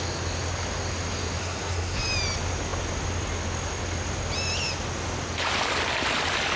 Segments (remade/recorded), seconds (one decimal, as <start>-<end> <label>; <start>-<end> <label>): 0.0-1.4 recorded; 1.4-2.0 remade; 2.0-6.6 recorded